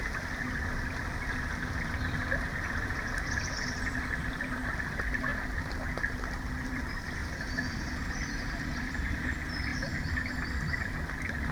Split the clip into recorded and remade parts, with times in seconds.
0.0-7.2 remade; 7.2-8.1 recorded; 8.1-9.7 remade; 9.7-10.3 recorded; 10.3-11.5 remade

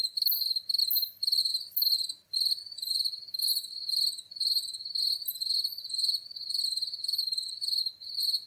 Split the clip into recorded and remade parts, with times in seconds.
0.0-8.5 recorded